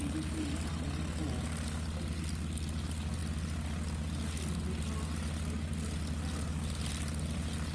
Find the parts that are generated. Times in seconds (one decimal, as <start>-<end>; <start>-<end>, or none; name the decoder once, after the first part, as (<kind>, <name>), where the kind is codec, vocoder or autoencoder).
none